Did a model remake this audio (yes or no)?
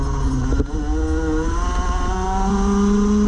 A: no